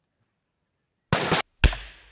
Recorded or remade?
recorded